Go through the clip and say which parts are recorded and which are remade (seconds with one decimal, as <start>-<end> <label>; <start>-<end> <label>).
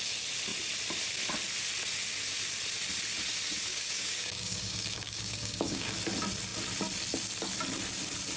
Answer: 0.0-3.7 recorded; 3.7-5.9 remade; 5.9-8.4 recorded